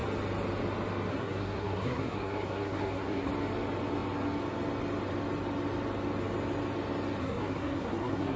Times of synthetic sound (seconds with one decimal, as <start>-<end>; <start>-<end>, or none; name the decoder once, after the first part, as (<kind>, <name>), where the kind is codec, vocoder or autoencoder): 1.1-3.3 (codec, SNAC); 7.2-8.4

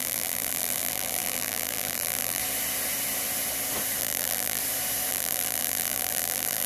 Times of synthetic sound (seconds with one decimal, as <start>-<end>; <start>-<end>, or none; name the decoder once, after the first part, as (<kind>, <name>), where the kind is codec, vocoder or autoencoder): 0.0-2.4 (vocoder, BigVGAN v2); 4.0-4.6; 5.1-6.7

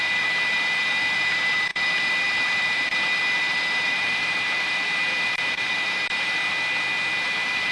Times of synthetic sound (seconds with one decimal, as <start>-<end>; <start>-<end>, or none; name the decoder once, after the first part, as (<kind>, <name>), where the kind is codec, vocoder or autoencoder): 0.0-6.4 (vocoder, BigVGAN v2); 7.2-7.7